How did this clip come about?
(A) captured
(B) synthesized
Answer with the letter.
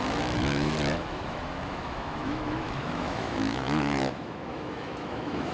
B